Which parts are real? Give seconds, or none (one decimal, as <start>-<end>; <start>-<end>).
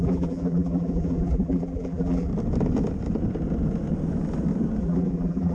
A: 2.3-4.8